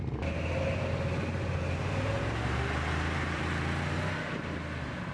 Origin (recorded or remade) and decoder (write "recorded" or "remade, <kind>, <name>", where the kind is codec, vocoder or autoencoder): recorded